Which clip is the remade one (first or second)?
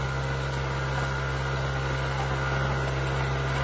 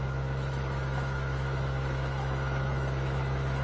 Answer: second